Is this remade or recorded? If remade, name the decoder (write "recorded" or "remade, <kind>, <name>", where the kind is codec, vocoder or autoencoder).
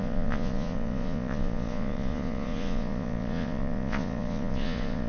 remade, vocoder, Vocos